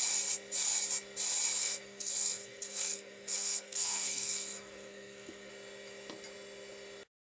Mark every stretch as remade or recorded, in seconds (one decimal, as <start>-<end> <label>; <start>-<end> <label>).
0.0-1.6 recorded; 1.6-5.5 remade; 5.5-7.2 recorded